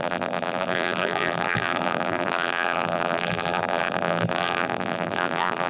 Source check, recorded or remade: remade